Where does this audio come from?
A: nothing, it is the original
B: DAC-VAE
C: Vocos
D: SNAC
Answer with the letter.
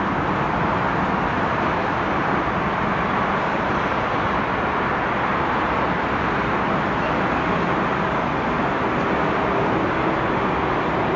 A